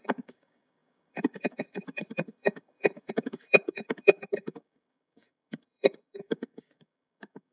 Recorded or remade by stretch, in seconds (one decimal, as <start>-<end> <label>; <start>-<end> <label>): 0.0-7.5 remade